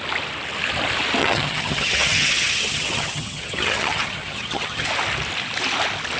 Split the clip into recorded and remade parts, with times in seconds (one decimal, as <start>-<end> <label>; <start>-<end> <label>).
0.0-1.2 recorded; 1.2-4.9 remade; 4.9-6.2 recorded